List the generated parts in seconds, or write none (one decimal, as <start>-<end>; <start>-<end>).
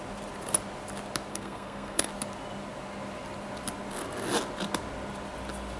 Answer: 1.3-2.1